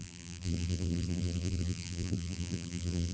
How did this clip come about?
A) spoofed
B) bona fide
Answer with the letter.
A